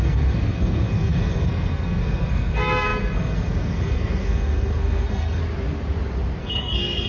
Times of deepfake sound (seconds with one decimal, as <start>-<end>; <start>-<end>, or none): 0.0-5.4; 6.4-7.1